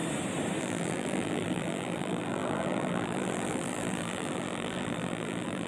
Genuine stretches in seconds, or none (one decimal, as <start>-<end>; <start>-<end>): 0.0-0.6